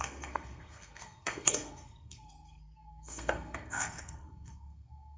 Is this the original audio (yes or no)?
no